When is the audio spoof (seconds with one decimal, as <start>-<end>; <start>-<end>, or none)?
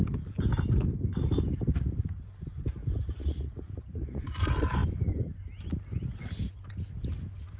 3.2-4.2